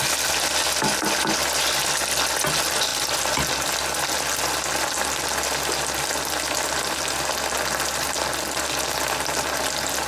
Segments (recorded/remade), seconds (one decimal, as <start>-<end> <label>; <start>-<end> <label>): 0.0-10.1 recorded